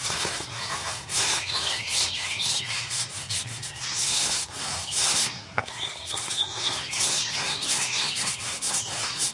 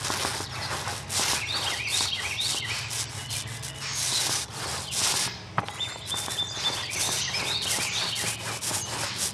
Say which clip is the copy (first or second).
first